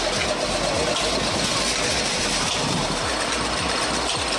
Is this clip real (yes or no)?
yes